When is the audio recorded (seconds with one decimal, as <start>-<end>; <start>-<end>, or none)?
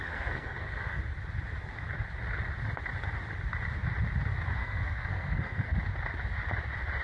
1.0-4.6; 5.8-7.0